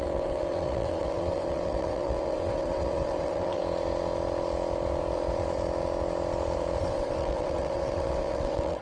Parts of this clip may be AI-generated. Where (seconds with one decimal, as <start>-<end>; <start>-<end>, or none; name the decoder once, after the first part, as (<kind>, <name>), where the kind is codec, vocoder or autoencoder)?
0.0-3.6 (vocoder, WaveNeXt); 6.8-8.8